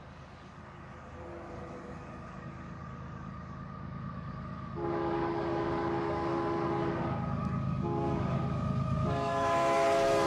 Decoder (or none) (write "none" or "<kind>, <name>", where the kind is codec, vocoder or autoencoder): codec, DAC